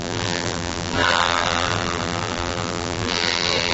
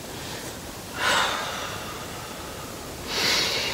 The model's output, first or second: first